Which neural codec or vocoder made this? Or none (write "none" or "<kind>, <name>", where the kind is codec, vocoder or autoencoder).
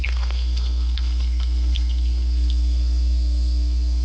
codec, SNAC